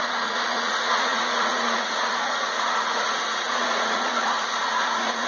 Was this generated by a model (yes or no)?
yes